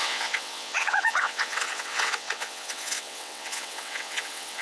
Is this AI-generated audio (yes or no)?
yes